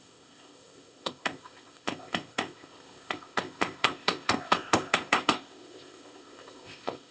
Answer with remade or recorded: remade